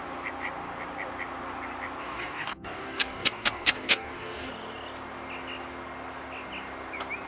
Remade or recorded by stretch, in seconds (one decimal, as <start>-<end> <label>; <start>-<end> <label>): 0.0-2.0 recorded; 2.0-4.5 remade; 4.5-7.3 recorded